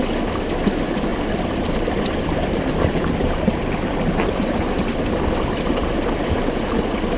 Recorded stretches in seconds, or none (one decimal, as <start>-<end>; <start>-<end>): 0.0-1.1; 3.6-7.2